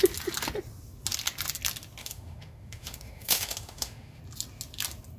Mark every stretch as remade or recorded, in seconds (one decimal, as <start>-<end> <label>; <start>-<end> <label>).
0.0-2.0 recorded; 2.0-4.2 remade; 4.2-5.2 recorded